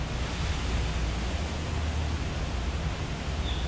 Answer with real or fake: real